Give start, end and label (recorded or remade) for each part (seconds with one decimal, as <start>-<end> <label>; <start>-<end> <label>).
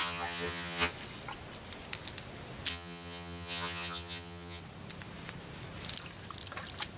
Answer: 0.0-0.9 remade; 0.9-2.7 recorded; 2.7-4.6 remade; 4.6-7.0 recorded